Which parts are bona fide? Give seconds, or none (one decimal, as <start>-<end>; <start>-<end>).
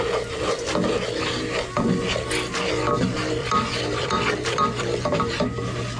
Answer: 0.0-3.4; 5.3-6.0